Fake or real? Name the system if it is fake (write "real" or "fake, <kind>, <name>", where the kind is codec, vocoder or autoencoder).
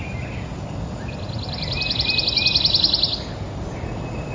real